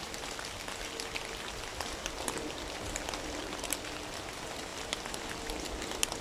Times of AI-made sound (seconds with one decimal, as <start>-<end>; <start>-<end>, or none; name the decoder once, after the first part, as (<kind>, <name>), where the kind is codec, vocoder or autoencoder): 1.7-3.0 (vocoder, BigVGAN v2); 4.7-5.7